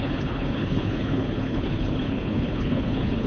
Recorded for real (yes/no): no